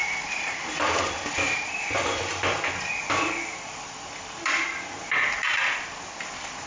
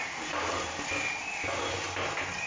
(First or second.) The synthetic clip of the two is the first